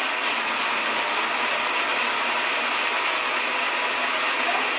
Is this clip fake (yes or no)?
no